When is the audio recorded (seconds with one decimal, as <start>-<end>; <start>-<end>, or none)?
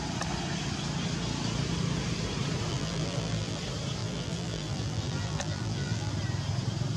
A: 0.0-2.7; 3.6-4.0; 6.1-7.0